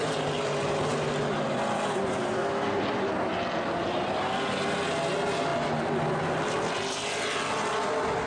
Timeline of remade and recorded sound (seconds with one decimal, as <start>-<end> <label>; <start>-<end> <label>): 0.0-8.3 recorded